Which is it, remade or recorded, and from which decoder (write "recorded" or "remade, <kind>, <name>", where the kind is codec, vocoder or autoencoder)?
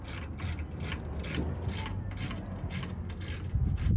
recorded